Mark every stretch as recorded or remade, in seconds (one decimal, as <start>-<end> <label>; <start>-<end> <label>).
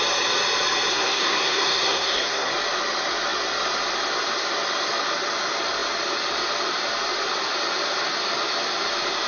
0.0-0.9 recorded; 0.9-2.5 remade; 2.5-9.3 recorded